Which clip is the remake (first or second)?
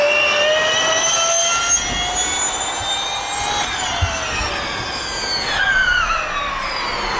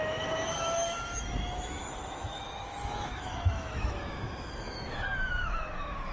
second